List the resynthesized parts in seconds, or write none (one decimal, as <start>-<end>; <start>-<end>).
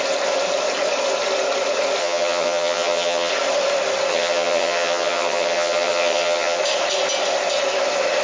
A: 2.0-3.3; 4.1-6.6